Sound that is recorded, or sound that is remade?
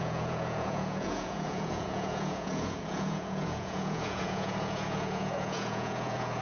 remade